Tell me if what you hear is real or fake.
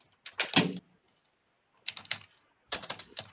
real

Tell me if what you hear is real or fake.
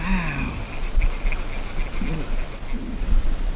real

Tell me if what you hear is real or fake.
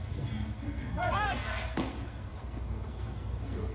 fake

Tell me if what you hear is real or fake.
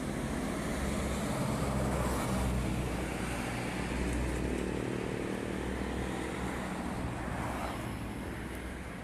real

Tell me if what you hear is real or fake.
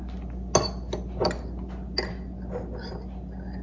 real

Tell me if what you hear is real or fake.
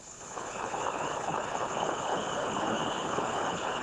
fake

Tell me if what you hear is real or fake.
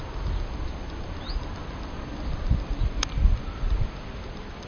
real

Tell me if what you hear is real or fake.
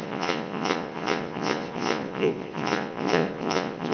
fake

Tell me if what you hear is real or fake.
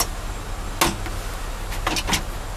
real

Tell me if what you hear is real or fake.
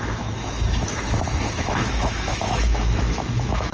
fake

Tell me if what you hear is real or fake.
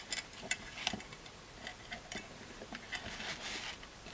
real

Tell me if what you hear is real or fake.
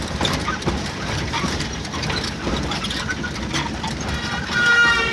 fake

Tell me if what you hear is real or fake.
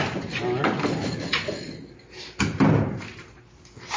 real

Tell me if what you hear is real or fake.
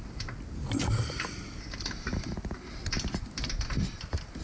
real